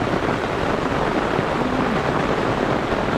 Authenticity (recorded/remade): recorded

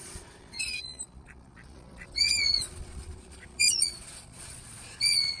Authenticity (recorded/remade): remade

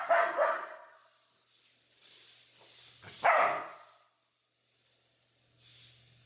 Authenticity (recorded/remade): recorded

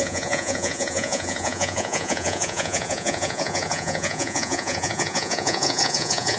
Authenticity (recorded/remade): remade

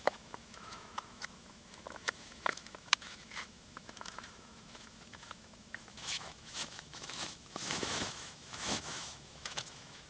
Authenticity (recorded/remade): remade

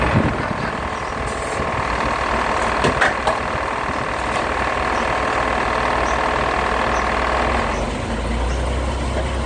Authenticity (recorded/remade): recorded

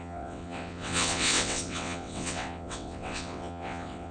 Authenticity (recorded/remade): remade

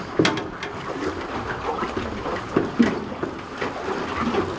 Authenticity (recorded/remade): recorded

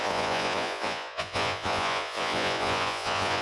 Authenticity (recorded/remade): remade